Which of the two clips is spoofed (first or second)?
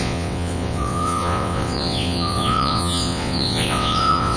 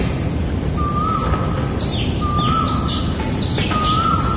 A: first